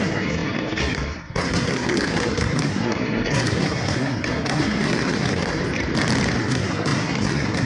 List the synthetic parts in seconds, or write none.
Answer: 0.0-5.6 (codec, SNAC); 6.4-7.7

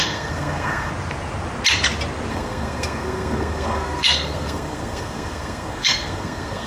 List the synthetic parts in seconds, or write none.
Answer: 0.0-0.9 (codec, SNAC); 2.3-6.7

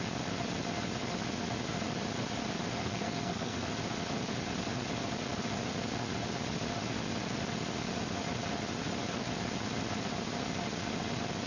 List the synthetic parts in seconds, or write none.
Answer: 2.8-3.7 (codec, SNAC)

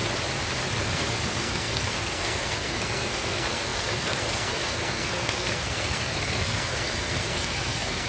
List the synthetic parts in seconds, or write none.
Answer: 0.8-8.1 (codec, SNAC)

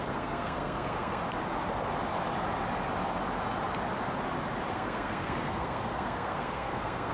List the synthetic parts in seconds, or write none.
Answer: 0.0-1.2 (codec, SNAC); 4.7-7.1

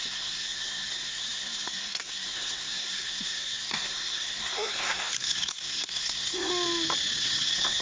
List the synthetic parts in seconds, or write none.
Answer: 0.0-6.5 (codec, SNAC); 7.2-7.8

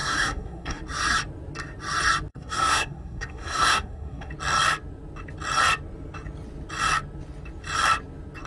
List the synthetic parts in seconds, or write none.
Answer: 0.0-0.8 (codec, SNAC); 2.3-4.3